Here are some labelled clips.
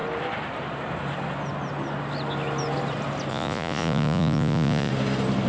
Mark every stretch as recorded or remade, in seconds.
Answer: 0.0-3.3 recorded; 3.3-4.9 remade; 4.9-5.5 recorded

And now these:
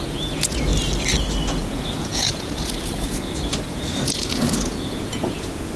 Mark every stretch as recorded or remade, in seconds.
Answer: 0.0-0.7 remade; 0.7-1.5 recorded; 1.5-5.8 remade